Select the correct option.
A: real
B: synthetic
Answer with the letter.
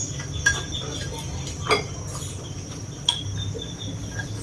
A